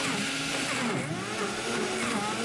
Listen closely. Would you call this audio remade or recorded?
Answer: recorded